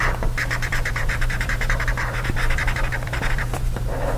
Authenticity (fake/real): fake